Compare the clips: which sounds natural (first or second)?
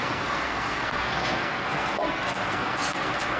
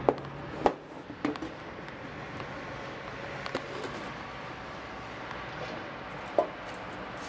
second